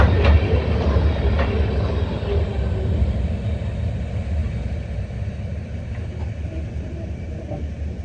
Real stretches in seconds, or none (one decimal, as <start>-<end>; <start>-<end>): 0.0-8.0